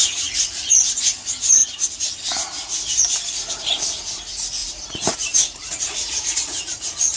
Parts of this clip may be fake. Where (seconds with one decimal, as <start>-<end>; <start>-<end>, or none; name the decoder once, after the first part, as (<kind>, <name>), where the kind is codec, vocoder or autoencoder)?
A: 0.0-0.8 (vocoder, Vocos); 1.6-2.8; 4.6-7.2